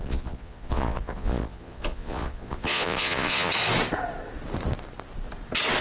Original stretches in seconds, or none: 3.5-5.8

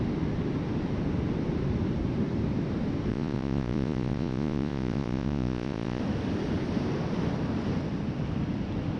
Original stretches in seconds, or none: 0.0-3.1; 6.0-9.0